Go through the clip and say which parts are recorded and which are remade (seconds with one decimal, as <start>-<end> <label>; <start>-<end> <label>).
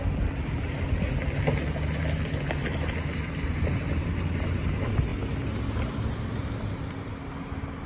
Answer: 0.0-7.9 recorded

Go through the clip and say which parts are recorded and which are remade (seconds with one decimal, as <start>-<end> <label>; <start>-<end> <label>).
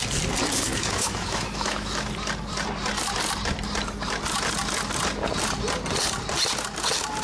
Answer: 0.0-0.7 recorded; 0.7-2.1 remade; 2.1-7.2 recorded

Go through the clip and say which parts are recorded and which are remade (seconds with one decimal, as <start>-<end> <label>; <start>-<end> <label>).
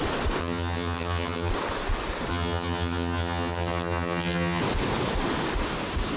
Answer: 0.0-0.4 recorded; 0.4-1.5 remade; 1.5-2.3 recorded; 2.3-4.6 remade; 4.6-6.2 recorded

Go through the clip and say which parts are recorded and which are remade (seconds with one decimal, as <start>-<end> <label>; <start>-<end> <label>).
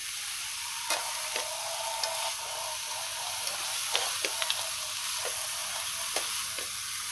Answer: 0.0-1.6 remade; 1.6-5.6 recorded; 5.6-7.1 remade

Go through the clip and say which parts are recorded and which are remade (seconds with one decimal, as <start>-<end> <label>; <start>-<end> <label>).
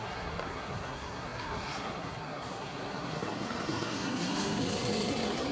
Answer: 0.0-5.5 remade